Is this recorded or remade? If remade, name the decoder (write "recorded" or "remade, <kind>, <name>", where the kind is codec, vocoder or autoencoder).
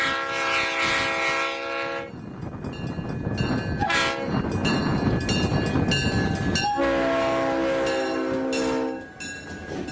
recorded